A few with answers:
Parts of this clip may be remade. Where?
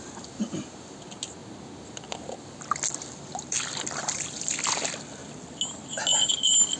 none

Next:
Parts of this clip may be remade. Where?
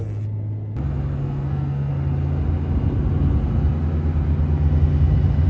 1.2-1.9 (codec, SNAC)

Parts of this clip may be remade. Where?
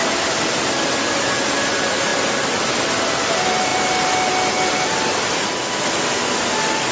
none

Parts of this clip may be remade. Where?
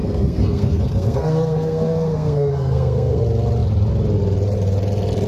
0.0-3.2 (codec, SNAC)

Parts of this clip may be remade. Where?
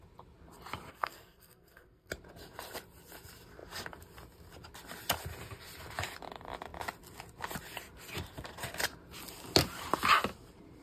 0.9-2.1 (codec, SNAC)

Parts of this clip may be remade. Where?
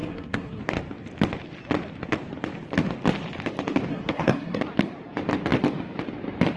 0.0-0.6 (codec, SNAC); 3.9-4.6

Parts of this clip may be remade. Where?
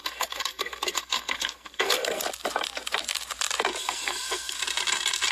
0.0-2.2 (codec, SNAC); 3.8-4.6